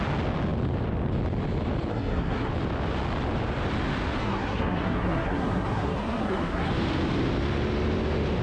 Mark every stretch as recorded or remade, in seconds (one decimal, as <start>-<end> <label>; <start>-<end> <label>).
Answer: 0.0-1.9 recorded; 1.9-2.5 remade; 2.5-4.2 recorded; 4.2-6.7 remade; 6.7-8.4 recorded